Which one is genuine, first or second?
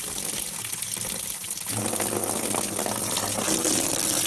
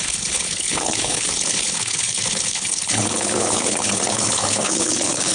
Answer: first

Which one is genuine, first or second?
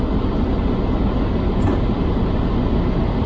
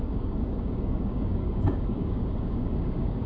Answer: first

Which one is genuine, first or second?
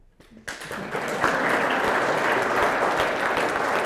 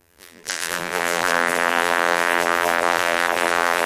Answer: first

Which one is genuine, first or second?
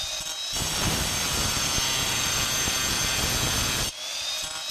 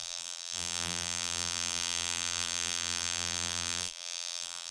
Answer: first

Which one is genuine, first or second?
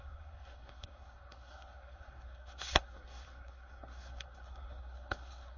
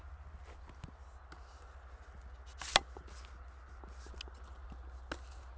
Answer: second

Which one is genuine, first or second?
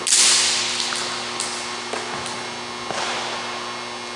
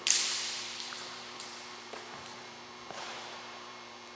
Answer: first